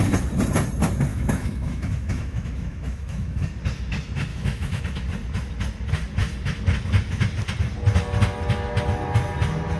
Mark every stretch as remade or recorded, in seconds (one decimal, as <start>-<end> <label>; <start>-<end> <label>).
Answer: 0.0-1.1 recorded; 1.1-3.5 remade; 3.5-4.3 recorded; 4.3-4.8 remade; 4.8-9.8 recorded